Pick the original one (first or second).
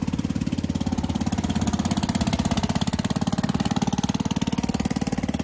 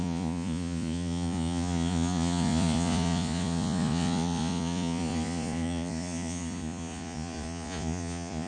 first